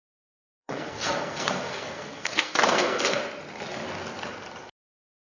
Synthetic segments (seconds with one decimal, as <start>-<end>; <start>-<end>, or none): 0.0-3.2; 4.7-5.3